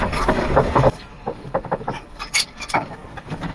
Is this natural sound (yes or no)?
no